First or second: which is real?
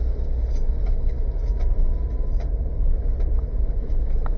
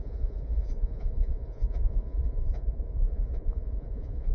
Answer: first